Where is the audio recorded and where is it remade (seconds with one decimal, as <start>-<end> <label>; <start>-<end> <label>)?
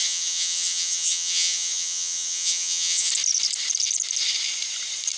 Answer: 0.0-3.1 remade; 3.1-5.2 recorded